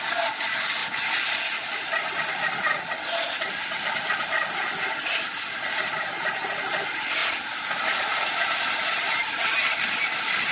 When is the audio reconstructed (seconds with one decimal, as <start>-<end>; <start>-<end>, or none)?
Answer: none